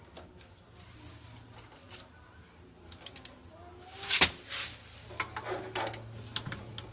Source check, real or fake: real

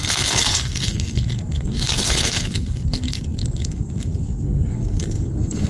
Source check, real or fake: fake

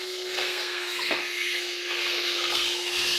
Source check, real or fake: fake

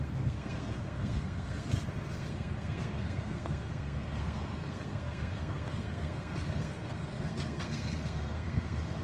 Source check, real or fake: fake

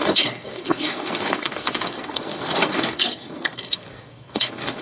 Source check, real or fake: fake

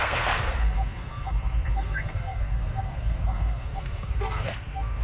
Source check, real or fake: fake